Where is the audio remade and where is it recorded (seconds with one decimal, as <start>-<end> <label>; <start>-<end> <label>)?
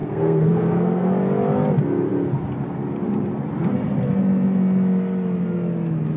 0.0-1.1 remade; 1.1-6.2 recorded